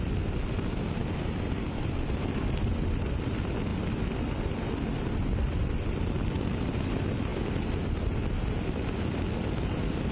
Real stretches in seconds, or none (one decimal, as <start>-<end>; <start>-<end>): 0.0-10.1